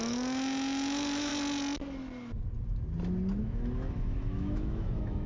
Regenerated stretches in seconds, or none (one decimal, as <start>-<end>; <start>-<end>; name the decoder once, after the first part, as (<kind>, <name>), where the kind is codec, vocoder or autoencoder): 0.0-1.3 (autoencoder, DAC-VAE); 3.4-5.3